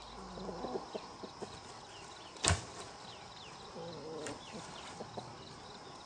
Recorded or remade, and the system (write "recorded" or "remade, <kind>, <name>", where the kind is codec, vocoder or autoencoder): recorded